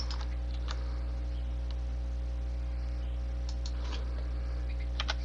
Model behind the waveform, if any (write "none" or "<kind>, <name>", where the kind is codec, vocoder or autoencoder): none